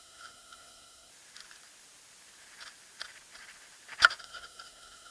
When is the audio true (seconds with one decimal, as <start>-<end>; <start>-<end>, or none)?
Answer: 1.1-4.2